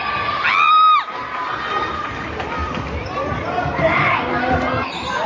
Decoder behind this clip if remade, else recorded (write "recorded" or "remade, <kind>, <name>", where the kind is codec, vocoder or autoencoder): recorded